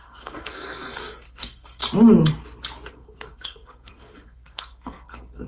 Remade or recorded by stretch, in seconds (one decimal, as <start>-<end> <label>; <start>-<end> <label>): 0.0-1.8 remade; 1.8-2.9 recorded; 2.9-5.5 remade